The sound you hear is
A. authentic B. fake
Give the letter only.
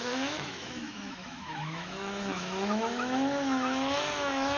B